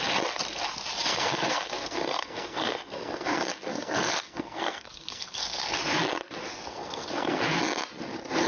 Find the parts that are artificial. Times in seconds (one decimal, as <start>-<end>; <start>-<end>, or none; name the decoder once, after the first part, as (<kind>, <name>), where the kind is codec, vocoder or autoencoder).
1.0-5.8 (codec, SNAC); 6.7-7.6